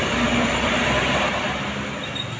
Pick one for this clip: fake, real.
real